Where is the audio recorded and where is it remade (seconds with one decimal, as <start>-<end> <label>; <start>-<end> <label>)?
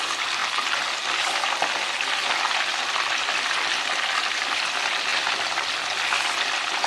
0.0-6.9 recorded